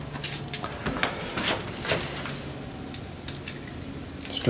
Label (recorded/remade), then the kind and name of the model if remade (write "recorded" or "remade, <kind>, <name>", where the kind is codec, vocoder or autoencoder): recorded